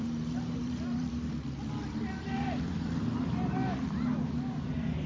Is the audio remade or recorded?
remade